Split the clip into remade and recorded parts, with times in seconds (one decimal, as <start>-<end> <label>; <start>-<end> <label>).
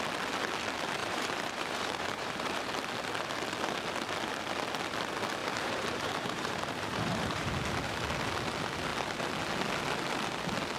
0.0-1.0 recorded; 1.0-2.7 remade; 2.7-5.4 recorded; 5.4-7.5 remade; 7.5-10.8 recorded